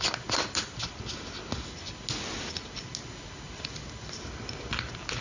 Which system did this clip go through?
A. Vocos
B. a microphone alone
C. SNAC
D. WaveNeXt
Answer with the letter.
B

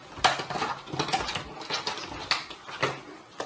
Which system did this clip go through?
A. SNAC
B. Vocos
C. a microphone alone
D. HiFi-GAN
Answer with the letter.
C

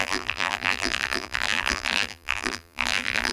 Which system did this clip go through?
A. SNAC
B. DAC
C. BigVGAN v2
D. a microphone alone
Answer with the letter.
C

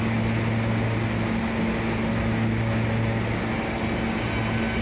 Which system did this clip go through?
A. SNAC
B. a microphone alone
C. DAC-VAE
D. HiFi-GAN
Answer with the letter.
B